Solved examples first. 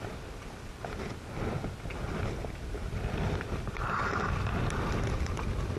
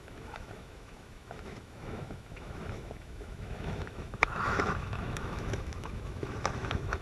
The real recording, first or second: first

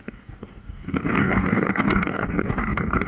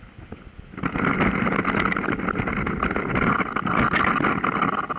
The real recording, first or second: second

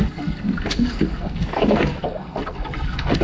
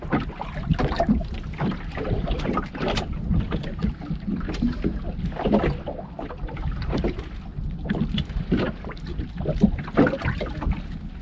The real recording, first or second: second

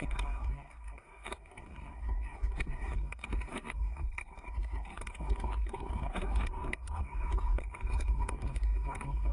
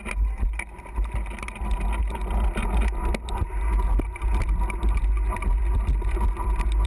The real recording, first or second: second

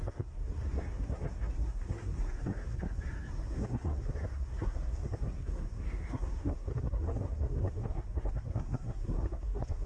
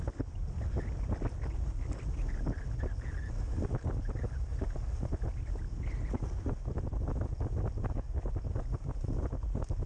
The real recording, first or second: second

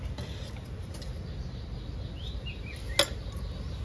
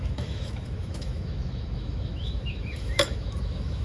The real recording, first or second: first